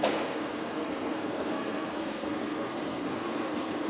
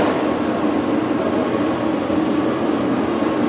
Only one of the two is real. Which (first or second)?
second